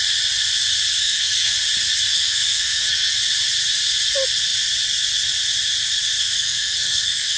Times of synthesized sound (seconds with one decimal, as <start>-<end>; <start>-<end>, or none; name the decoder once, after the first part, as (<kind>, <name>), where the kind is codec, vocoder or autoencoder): 1.0-1.5 (codec, SNAC); 2.1-3.1; 6.2-7.4